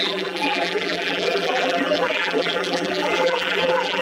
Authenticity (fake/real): fake